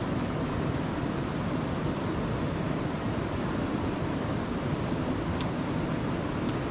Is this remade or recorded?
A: recorded